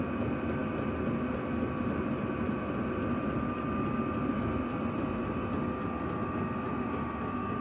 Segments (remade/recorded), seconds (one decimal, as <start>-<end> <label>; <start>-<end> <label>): 0.0-7.6 recorded